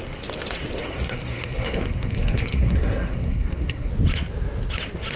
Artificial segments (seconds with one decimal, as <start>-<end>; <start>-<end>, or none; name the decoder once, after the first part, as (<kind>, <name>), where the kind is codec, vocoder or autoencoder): 0.8-3.9 (codec, SNAC)